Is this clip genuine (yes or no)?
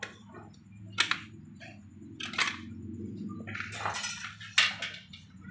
yes